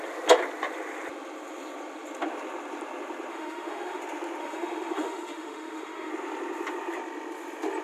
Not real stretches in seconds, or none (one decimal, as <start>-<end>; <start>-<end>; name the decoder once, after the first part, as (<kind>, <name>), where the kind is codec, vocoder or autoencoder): 3.3-4.0 (autoencoder, DAC-VAE); 4.4-6.1